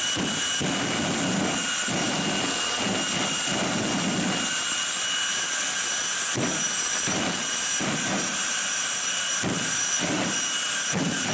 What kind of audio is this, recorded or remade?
remade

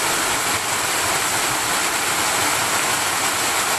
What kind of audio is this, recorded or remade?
recorded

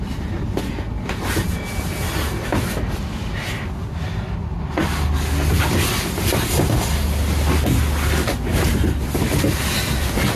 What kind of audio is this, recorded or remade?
recorded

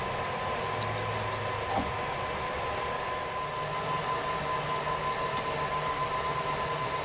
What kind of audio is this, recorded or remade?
recorded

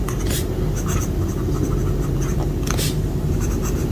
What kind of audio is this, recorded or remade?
recorded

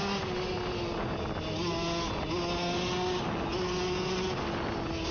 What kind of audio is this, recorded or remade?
recorded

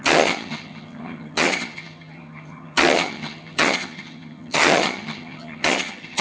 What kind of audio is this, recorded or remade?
remade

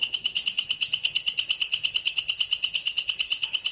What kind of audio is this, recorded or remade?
recorded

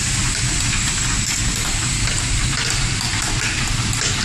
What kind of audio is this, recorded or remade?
recorded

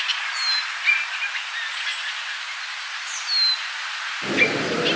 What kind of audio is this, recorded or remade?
recorded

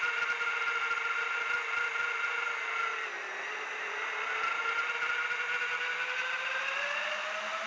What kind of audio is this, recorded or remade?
recorded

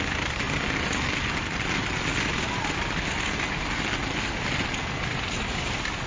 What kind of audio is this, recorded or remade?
recorded